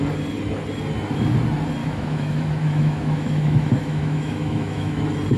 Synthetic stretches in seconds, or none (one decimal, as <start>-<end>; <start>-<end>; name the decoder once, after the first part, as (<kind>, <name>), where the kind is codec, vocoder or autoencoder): 1.8-5.0 (autoencoder, DAC-VAE)